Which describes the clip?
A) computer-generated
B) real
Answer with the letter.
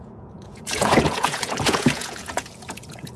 A